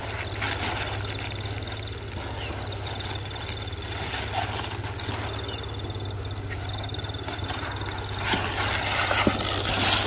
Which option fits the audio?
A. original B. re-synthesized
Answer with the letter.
A